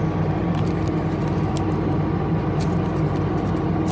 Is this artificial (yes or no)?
no